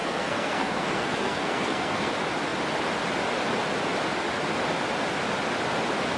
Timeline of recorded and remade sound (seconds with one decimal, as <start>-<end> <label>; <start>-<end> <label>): 0.0-2.1 remade; 2.1-6.2 recorded

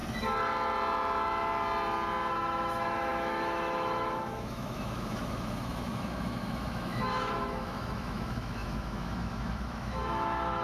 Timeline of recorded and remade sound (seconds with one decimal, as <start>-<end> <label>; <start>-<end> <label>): 0.0-2.3 recorded; 2.3-10.6 remade